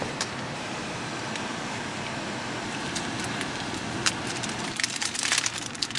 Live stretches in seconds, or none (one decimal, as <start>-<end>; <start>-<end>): 1.1-4.6